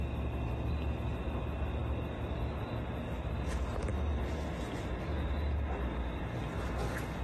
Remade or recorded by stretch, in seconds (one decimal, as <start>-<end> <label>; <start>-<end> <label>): 0.0-7.2 recorded